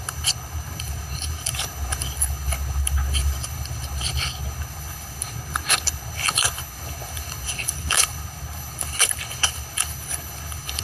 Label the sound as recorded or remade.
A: remade